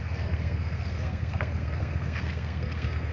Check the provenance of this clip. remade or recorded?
remade